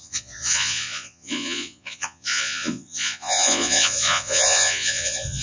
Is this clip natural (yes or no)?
no